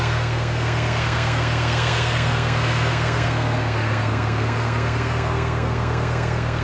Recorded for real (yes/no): no